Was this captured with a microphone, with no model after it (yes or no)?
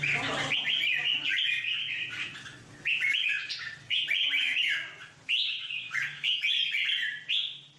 yes